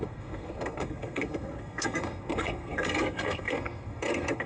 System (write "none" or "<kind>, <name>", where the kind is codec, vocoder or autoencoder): codec, SNAC